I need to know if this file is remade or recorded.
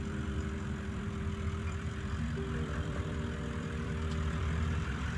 remade